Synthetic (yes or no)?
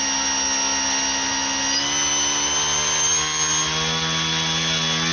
no